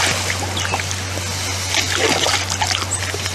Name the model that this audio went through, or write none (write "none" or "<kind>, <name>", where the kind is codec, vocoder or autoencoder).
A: none